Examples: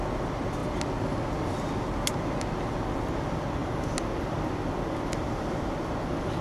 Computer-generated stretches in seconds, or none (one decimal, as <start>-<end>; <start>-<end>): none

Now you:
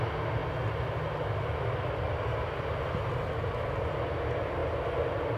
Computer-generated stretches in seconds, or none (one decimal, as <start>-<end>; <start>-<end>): none

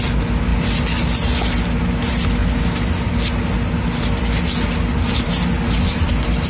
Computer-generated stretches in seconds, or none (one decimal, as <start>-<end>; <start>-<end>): none